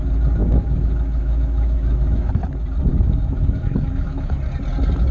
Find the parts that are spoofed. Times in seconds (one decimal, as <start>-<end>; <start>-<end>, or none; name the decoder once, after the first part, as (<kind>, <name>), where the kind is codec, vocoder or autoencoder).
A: 0.4-2.3 (autoencoder, DAC-VAE); 2.9-4.4